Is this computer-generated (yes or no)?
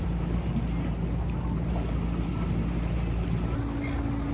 no